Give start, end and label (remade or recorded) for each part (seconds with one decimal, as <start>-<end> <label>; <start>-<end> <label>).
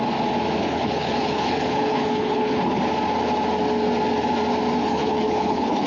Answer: 0.0-0.6 recorded; 0.6-2.8 remade; 2.8-4.8 recorded; 4.8-5.9 remade